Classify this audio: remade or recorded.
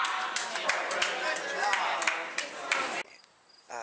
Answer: recorded